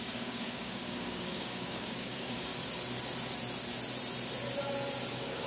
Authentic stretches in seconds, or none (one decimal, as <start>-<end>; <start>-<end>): 2.5-5.1